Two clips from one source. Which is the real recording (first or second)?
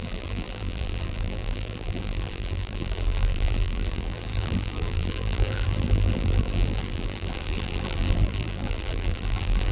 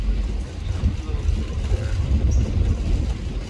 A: second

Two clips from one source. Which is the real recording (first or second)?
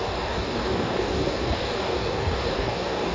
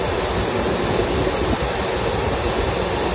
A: second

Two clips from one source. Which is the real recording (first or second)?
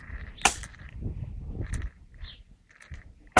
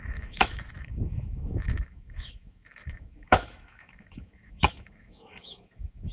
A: first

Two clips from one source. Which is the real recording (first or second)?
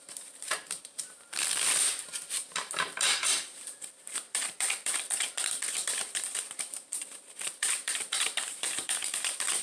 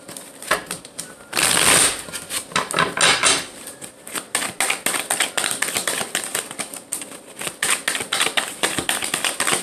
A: second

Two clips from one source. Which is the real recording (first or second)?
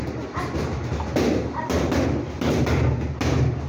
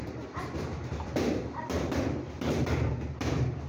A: first